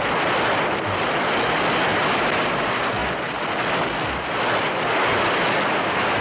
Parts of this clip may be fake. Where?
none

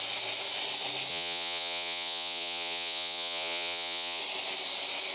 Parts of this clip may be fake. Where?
1.1-4.2

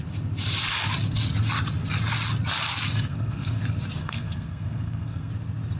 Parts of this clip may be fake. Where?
3.1-3.6; 4.0-5.3

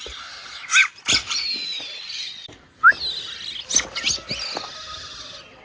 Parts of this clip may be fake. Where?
0.8-2.9

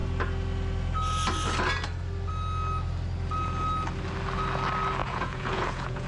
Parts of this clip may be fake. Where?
5.0-6.1

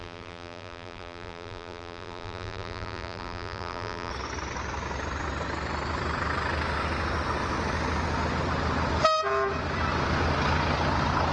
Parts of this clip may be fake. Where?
0.0-4.1

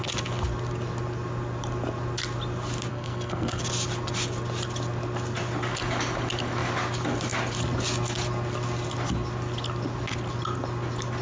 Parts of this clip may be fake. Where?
2.9-3.6